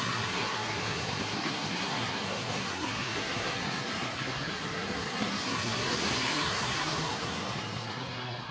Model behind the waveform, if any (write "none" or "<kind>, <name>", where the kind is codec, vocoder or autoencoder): codec, SNAC